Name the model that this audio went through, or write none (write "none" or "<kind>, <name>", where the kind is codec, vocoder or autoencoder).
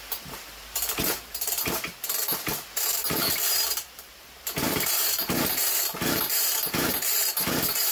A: vocoder, BigVGAN v2